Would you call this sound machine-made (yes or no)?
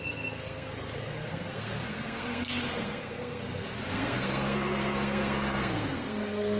yes